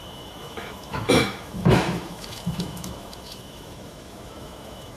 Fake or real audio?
fake